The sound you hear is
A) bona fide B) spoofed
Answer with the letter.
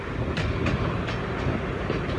A